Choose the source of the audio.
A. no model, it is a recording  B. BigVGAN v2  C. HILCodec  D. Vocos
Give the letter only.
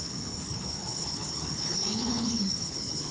C